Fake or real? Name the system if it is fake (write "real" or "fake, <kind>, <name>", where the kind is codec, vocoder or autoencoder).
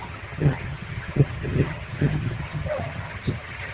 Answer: fake, vocoder, HiFi-GAN